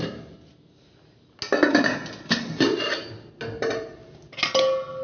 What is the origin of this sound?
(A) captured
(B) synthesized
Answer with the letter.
A